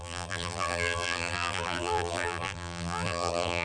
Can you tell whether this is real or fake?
fake